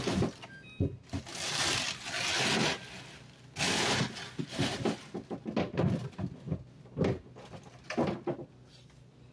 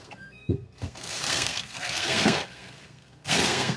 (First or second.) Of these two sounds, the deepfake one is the second